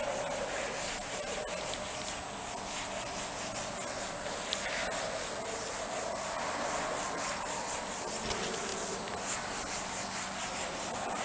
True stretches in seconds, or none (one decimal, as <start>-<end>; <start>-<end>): 0.0-11.2